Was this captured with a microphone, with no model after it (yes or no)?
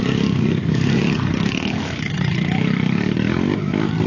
no